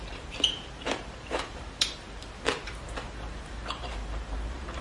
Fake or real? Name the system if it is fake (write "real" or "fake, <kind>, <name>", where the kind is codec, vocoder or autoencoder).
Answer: fake, vocoder, BigVGAN v2